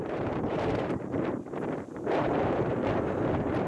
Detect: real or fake fake